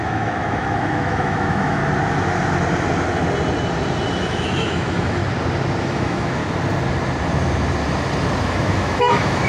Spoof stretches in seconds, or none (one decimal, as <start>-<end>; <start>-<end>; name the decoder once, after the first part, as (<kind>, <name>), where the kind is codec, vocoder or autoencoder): 0.0-1.8 (autoencoder, DAC-VAE); 4.2-5.2; 5.8-6.4; 8.4-9.5

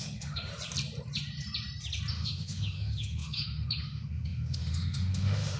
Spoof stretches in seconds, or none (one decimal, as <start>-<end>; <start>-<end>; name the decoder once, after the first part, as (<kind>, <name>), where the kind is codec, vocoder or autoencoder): 0.0-0.5 (autoencoder, DAC-VAE); 2.1-5.6

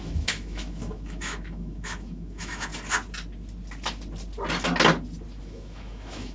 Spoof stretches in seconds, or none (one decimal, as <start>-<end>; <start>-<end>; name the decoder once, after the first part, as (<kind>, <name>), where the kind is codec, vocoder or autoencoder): 0.0-2.7 (autoencoder, DAC-VAE); 5.4-6.3